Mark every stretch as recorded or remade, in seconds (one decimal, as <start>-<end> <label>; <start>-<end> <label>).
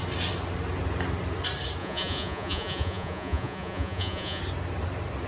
0.0-1.8 recorded; 1.8-4.4 remade; 4.4-5.3 recorded